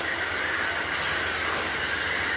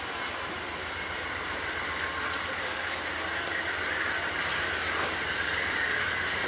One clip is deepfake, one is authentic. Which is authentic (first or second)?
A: first